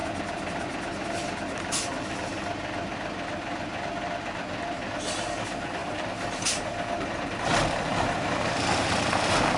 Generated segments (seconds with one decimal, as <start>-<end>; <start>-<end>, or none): 5.8-8.8